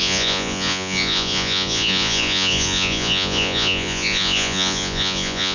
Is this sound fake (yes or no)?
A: yes